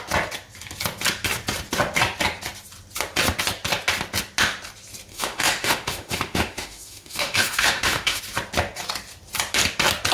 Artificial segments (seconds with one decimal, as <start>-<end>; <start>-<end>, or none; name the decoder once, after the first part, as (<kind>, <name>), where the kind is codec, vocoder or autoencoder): 5.1-8.2 (autoencoder, DAC-VAE)